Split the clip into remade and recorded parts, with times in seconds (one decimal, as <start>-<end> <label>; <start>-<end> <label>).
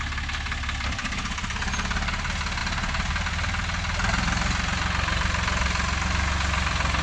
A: 0.0-7.0 recorded